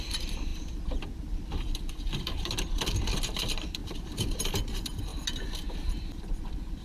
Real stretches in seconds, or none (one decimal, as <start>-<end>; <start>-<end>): 5.1-6.3